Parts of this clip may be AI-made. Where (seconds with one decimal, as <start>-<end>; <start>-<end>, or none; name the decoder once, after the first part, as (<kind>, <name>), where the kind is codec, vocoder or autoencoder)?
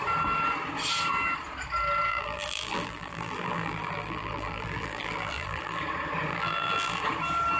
2.1-5.8 (vocoder, BigVGAN v2); 6.3-7.0